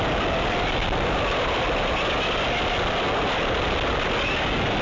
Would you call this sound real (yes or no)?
yes